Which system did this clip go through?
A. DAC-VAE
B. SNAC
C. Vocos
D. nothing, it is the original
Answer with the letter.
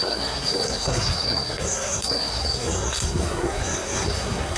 B